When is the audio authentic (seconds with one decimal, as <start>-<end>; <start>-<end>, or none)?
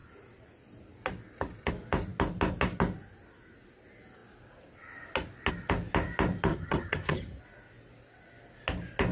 0.0-6.5; 7.4-9.1